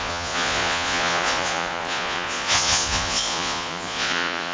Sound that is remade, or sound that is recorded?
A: remade